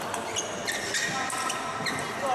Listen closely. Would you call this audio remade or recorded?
recorded